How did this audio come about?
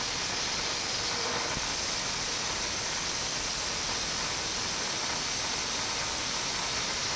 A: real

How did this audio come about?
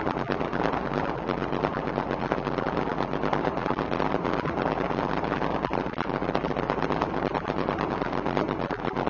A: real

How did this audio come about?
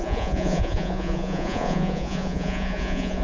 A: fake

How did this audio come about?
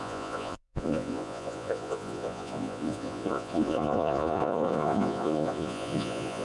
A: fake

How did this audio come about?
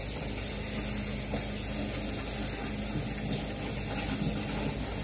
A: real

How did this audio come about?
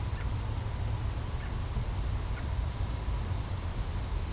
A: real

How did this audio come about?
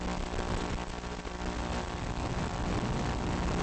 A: real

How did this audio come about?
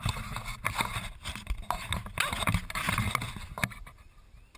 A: real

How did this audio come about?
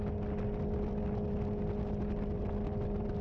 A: real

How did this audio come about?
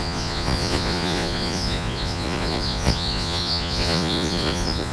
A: fake